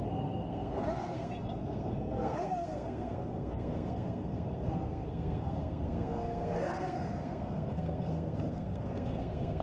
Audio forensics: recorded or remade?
remade